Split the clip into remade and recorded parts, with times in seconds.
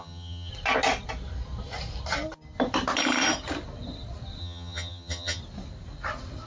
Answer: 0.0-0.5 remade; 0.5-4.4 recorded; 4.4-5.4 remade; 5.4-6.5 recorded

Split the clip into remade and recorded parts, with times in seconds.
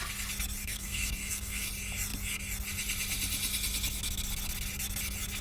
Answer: 0.0-0.6 recorded; 0.6-1.7 remade; 1.7-5.4 recorded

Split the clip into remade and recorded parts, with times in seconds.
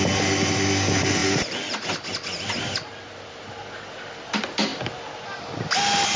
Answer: 0.0-1.2 recorded; 1.2-3.3 remade; 3.3-6.2 recorded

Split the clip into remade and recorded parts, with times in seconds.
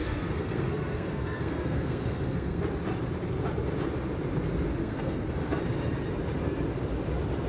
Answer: 0.0-2.6 remade; 2.6-4.8 recorded; 4.8-5.6 remade; 5.6-7.5 recorded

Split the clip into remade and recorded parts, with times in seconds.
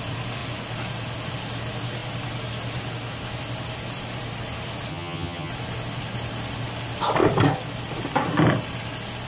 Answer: 0.0-4.9 recorded; 4.9-5.5 remade; 5.5-9.3 recorded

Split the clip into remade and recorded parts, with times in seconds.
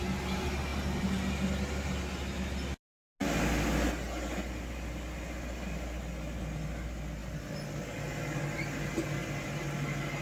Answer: 0.0-10.2 recorded